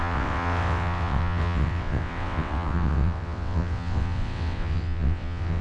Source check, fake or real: fake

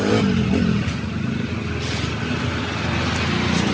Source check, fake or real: real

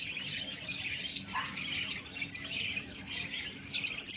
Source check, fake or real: real